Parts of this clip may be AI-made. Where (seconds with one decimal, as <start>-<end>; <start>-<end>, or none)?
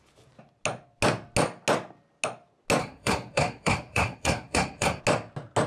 2.8-5.0